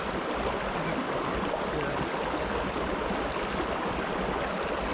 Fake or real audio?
real